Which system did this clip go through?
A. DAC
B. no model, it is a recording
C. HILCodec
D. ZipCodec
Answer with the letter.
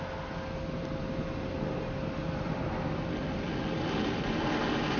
B